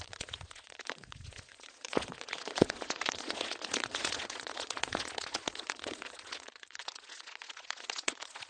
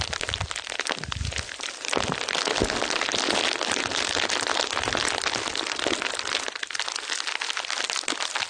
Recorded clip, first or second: second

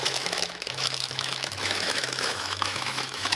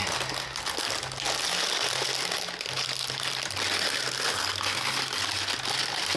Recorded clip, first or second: second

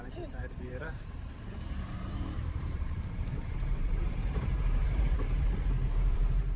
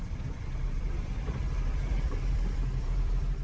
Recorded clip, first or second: second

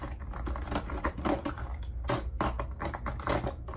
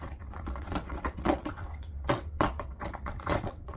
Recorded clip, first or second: first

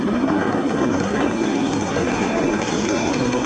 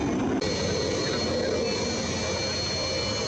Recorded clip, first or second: second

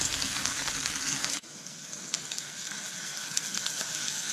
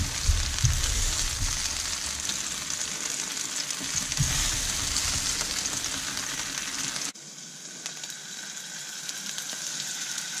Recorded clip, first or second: second